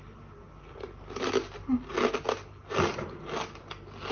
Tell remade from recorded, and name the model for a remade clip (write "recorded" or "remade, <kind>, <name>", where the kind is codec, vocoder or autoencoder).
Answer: recorded